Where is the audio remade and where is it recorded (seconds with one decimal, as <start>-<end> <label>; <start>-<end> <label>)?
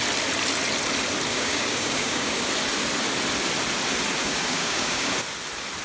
0.0-1.3 recorded; 1.3-2.5 remade; 2.5-4.2 recorded; 4.2-5.1 remade; 5.1-5.8 recorded